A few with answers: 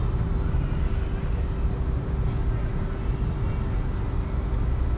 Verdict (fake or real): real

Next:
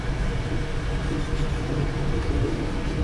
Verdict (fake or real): real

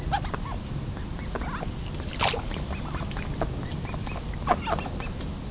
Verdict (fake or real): real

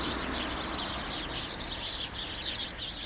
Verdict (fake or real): real